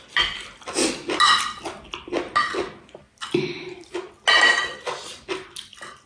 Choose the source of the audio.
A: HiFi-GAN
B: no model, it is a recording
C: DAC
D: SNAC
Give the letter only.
B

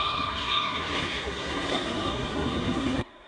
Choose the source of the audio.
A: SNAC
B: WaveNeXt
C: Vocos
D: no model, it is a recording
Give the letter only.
A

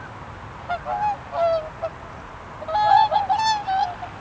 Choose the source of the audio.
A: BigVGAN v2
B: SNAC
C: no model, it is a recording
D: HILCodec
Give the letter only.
C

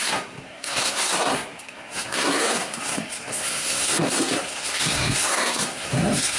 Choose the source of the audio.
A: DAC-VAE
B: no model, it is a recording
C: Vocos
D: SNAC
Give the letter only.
D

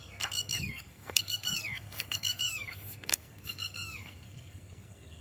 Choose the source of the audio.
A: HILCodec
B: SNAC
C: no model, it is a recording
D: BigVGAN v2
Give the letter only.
B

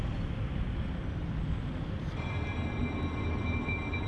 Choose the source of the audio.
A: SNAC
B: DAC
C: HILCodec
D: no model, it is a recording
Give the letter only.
D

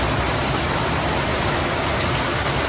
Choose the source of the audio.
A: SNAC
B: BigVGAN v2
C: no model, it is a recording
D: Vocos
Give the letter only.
C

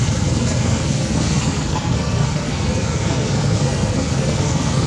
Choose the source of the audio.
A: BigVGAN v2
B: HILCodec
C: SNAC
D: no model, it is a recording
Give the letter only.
C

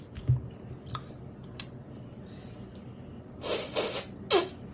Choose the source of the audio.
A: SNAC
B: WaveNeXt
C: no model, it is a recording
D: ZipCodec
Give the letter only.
C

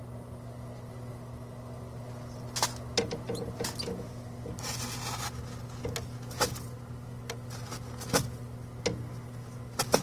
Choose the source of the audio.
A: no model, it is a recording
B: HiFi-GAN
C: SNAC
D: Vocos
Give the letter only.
A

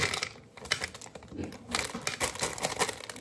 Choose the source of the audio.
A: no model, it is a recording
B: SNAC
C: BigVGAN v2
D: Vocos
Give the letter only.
A